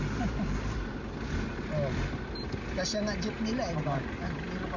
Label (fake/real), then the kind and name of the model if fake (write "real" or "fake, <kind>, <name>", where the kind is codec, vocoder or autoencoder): real